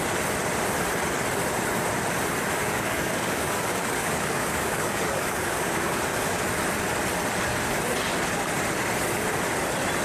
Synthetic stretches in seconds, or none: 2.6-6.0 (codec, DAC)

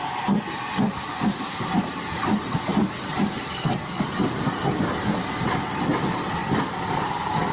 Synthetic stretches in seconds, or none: none